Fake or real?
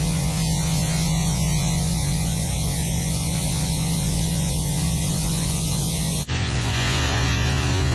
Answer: fake